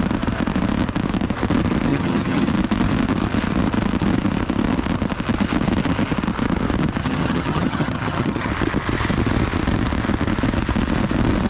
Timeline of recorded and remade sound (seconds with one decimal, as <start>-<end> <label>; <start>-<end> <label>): 0.0-1.9 recorded; 1.9-2.5 remade; 2.5-7.0 recorded; 7.0-8.5 remade; 8.5-11.5 recorded